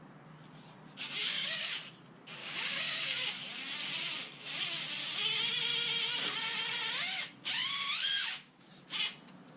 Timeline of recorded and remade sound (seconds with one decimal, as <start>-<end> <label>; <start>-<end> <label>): 0.0-1.2 recorded; 1.2-1.7 remade; 1.7-2.4 recorded; 2.4-3.3 remade; 3.3-8.0 recorded; 8.0-8.7 remade; 8.7-9.6 recorded